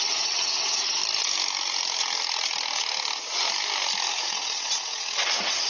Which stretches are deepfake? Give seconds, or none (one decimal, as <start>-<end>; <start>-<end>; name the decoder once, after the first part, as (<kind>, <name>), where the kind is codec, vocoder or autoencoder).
0.0-1.0 (vocoder, WaveNeXt); 4.2-5.7